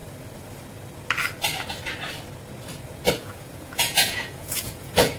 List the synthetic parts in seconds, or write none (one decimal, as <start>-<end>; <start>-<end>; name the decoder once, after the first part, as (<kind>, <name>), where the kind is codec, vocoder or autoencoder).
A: 3.1-5.2 (vocoder, Vocos)